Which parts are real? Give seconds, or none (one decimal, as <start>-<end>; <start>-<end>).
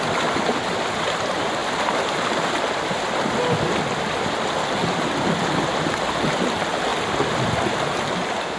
0.0-8.6